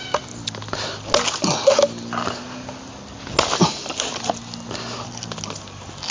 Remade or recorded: recorded